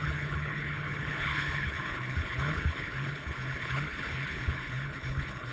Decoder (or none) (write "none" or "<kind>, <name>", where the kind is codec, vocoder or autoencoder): codec, HILCodec